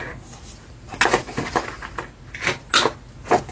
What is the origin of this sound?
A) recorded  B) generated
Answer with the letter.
A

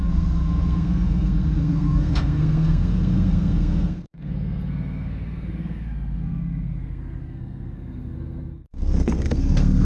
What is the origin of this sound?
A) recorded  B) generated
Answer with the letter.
B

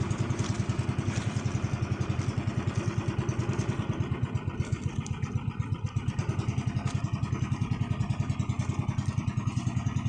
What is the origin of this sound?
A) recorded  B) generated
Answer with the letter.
A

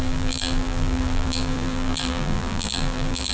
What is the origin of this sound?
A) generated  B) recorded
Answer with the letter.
A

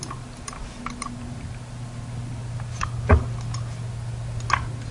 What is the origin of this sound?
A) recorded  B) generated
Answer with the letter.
A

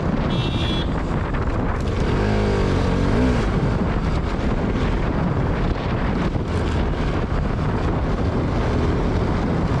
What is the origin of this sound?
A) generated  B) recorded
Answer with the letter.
B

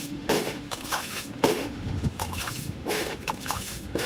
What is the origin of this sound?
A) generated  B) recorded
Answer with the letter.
A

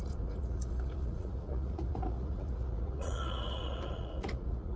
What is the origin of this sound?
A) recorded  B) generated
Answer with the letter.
B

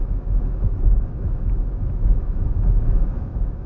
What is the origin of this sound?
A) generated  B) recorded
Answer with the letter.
A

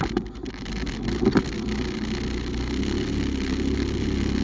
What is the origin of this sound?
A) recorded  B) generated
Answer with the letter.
A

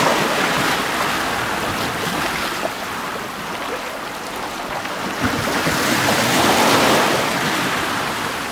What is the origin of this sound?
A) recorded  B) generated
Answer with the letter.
A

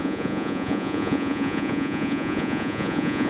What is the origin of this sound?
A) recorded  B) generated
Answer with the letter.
B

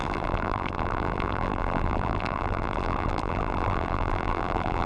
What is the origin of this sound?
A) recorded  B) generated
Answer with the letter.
B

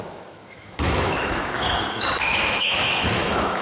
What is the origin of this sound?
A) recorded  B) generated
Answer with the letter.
B